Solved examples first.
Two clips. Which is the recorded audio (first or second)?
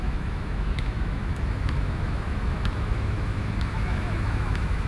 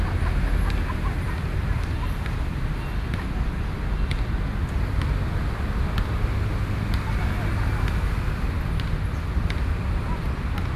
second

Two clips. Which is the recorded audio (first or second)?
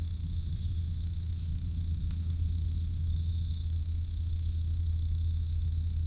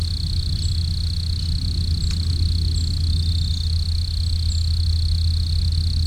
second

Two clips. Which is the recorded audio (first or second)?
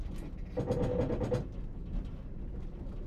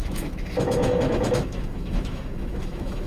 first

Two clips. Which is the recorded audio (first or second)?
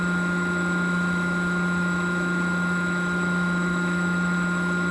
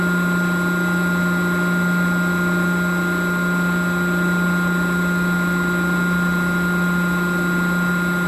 second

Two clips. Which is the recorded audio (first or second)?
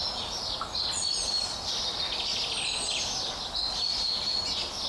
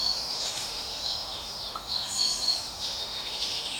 first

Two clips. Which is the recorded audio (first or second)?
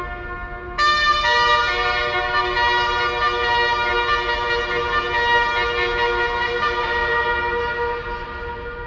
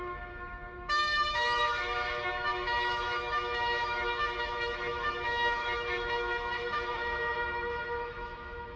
first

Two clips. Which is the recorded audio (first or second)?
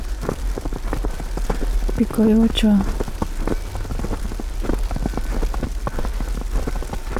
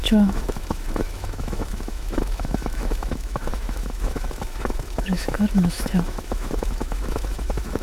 first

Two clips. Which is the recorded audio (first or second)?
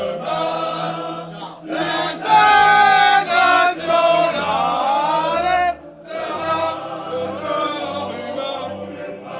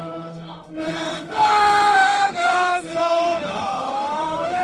first